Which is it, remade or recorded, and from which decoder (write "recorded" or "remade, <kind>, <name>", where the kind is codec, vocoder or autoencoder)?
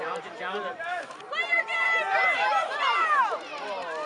remade, vocoder, BigVGAN v2